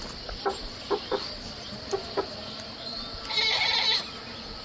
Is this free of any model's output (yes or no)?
yes